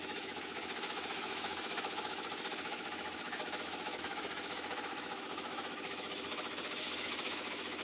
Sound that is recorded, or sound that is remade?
remade